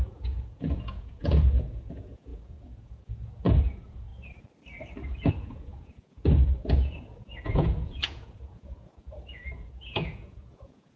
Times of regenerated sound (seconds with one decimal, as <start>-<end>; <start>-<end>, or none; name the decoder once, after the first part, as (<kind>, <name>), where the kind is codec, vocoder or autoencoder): 0.0-4.1 (vocoder, Vocos); 5.3-11.0